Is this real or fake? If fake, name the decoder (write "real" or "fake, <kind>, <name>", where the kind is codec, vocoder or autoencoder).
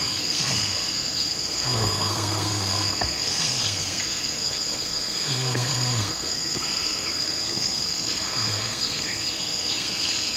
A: fake, codec, SNAC